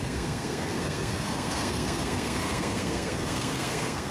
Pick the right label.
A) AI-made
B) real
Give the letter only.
A